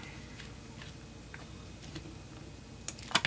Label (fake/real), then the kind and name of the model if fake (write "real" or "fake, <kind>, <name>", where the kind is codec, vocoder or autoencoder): real